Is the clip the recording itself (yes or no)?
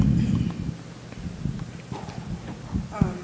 yes